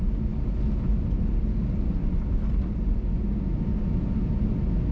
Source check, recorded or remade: recorded